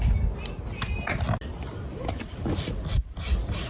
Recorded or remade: recorded